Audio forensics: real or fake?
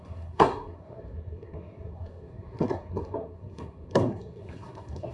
fake